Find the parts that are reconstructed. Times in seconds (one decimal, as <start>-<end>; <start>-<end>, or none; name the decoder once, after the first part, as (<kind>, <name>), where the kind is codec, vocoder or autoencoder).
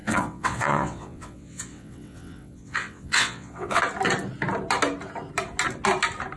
0.0-3.8 (vocoder, WaveNeXt)